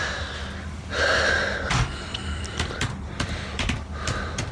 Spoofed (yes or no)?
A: no